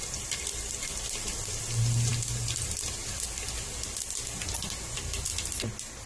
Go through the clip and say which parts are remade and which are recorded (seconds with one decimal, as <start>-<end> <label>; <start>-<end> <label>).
0.0-6.1 recorded